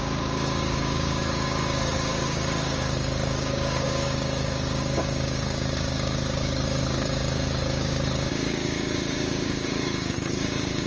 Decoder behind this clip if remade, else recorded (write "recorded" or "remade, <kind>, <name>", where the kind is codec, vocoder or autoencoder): remade, codec, DAC